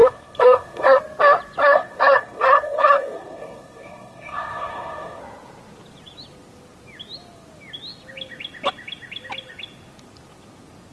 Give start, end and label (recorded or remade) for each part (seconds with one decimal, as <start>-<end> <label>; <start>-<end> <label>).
0.0-1.0 remade; 1.0-1.6 recorded; 1.6-5.2 remade; 5.2-10.9 recorded

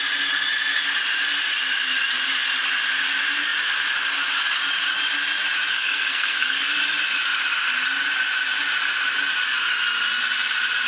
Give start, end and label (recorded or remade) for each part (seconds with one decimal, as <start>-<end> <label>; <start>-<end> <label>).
0.0-5.7 recorded; 5.7-6.7 remade; 6.7-10.9 recorded

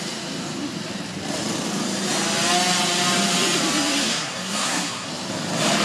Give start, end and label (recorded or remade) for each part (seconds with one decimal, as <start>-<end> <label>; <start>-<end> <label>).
0.0-4.0 recorded; 4.0-5.1 remade; 5.1-5.8 recorded

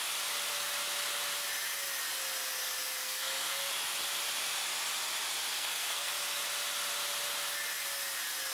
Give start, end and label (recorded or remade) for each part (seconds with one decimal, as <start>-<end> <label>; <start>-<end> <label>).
0.0-3.0 recorded; 3.0-3.7 remade; 3.7-5.5 recorded; 5.5-6.1 remade; 6.1-8.5 recorded

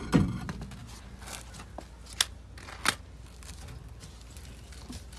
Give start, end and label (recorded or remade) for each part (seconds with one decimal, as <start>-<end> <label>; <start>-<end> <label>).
0.0-5.2 recorded

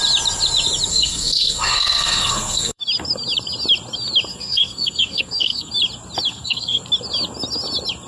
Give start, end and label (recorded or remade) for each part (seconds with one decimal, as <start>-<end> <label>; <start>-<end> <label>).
0.0-0.9 recorded; 0.9-2.8 remade; 2.8-4.3 recorded; 4.3-5.7 remade; 5.7-6.3 recorded; 6.3-6.8 remade; 6.8-8.1 recorded

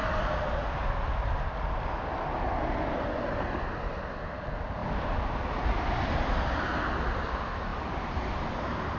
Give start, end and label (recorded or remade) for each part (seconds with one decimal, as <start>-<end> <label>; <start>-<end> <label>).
0.0-9.0 recorded

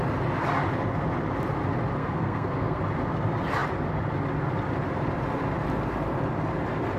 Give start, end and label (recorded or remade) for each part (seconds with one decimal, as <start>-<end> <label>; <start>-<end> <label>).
0.0-2.0 recorded; 2.0-2.8 remade; 2.8-7.0 recorded